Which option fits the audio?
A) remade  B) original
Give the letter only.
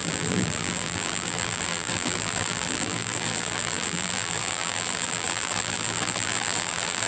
A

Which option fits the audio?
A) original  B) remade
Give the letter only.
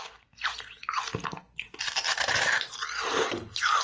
A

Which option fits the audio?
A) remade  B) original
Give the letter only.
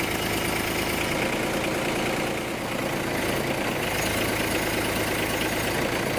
B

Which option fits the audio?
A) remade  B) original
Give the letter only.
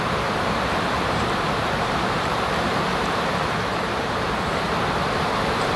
A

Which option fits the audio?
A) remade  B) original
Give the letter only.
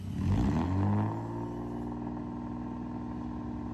B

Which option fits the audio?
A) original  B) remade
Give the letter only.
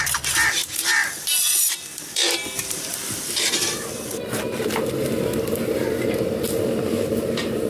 B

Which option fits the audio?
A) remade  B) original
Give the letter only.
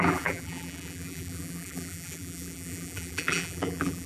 A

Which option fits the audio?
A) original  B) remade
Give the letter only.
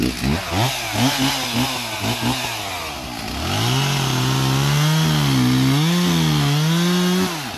A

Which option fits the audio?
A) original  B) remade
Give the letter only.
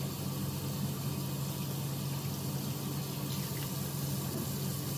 A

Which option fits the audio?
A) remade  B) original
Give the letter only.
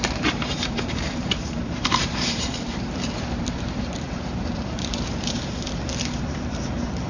A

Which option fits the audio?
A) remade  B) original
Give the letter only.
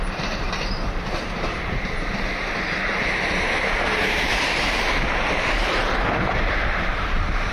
A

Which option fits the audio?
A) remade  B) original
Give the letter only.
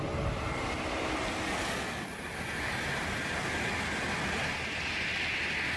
B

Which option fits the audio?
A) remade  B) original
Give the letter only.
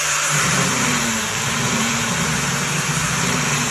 A